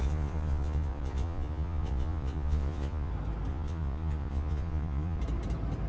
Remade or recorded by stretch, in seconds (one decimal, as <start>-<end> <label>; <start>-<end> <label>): 0.0-3.1 remade; 3.1-3.5 recorded; 3.5-5.2 remade; 5.2-5.9 recorded